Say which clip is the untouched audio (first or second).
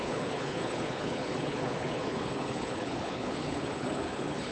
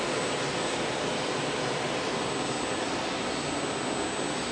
second